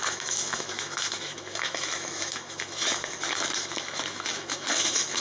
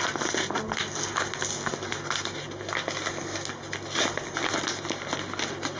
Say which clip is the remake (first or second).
first